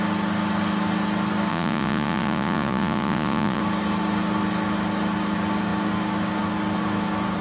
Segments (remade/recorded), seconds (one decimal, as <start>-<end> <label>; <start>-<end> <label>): 0.0-1.5 recorded; 1.5-3.6 remade; 3.6-7.4 recorded